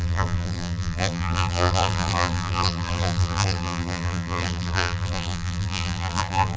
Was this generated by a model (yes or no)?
yes